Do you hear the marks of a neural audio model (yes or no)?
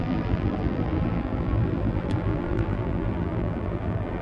yes